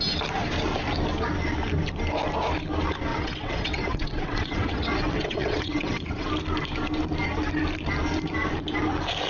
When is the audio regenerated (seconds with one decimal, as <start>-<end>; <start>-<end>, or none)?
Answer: 3.1-6.3